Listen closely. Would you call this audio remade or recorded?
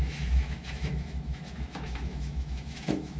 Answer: remade